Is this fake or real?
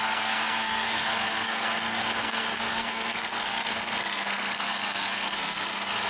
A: fake